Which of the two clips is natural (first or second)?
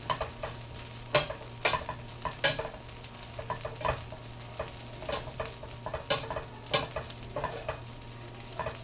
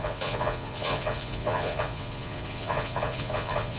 first